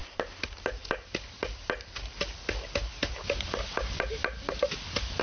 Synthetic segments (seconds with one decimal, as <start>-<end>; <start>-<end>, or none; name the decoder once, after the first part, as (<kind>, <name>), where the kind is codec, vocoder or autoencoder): none